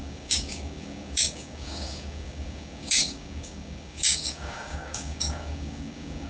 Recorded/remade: remade